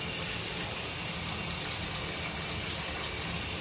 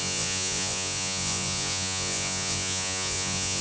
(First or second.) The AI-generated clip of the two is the second